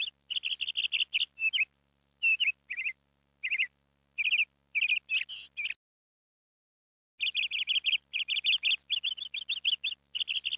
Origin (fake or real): real